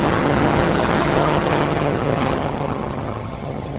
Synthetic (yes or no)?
yes